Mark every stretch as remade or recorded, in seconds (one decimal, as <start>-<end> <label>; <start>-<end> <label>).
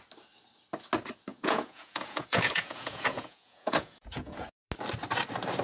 0.0-1.3 recorded; 1.3-4.7 remade; 4.7-5.6 recorded